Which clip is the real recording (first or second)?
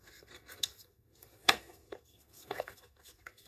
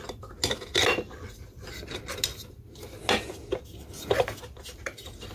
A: second